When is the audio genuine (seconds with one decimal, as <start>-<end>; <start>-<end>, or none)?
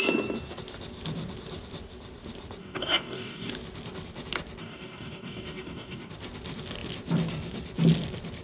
0.0-2.6; 3.5-4.6; 6.1-8.4